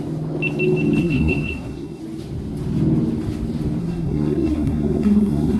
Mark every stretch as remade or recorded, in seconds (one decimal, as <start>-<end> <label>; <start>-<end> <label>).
0.0-1.0 recorded; 1.0-2.0 remade; 2.0-3.8 recorded; 3.8-5.6 remade

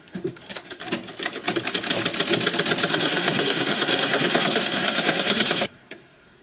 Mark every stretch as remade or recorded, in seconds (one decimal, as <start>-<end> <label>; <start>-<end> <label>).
0.0-0.8 remade; 0.8-2.9 recorded; 2.9-6.4 remade

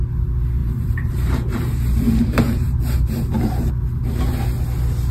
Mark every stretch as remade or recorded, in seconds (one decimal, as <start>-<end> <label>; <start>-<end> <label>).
0.0-0.6 recorded; 0.6-3.7 remade; 3.7-5.1 recorded

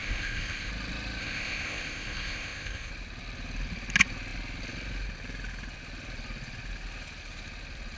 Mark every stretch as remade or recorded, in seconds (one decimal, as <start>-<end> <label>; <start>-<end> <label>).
0.0-0.7 remade; 0.7-1.2 recorded; 1.2-2.9 remade; 2.9-8.0 recorded

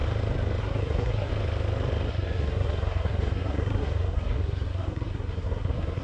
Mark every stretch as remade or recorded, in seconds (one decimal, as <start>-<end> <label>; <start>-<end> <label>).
0.0-0.6 recorded; 0.6-1.3 remade; 1.3-2.1 recorded; 2.1-6.0 remade

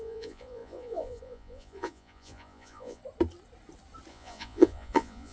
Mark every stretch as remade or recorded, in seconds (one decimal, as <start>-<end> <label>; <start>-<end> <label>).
0.0-3.0 remade; 3.0-4.1 recorded; 4.1-5.3 remade